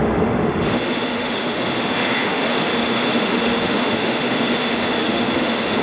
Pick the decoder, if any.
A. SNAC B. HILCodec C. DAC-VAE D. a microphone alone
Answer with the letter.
C